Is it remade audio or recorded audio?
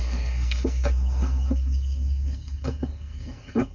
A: remade